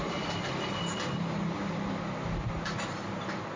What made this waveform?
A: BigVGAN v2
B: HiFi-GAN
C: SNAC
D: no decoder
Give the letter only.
D